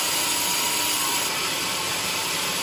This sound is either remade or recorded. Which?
remade